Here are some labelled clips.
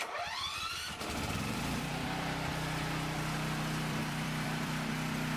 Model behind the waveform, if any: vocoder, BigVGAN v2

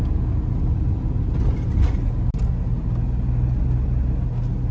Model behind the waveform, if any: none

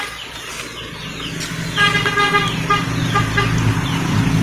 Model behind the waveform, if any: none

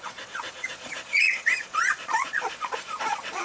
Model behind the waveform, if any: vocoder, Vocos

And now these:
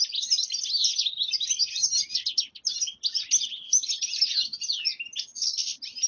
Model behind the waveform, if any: none